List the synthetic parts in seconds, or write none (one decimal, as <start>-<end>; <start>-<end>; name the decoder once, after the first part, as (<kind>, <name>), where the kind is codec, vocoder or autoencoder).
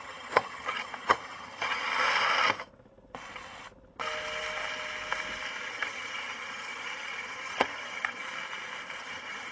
0.0-1.9 (vocoder, HiFi-GAN); 5.7-8.2; 9.0-9.5